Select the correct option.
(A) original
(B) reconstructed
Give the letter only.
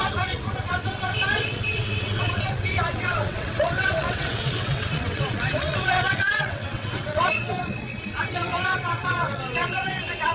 B